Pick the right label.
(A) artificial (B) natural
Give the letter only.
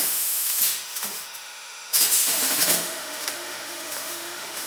A